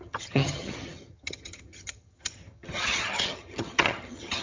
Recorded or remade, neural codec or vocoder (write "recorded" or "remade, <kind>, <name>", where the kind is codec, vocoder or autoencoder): remade, vocoder, HiFi-GAN